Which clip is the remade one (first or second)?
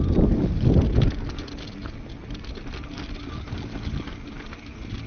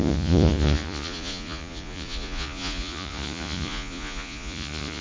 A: second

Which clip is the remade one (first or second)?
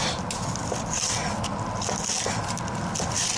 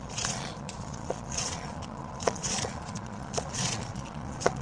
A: second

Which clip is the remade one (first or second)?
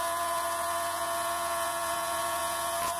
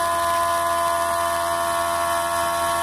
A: first